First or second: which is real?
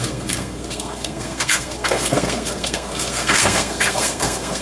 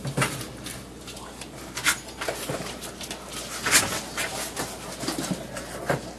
second